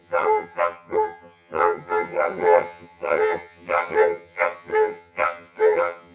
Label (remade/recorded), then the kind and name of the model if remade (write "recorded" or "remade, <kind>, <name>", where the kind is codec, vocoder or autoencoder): remade, vocoder, HiFi-GAN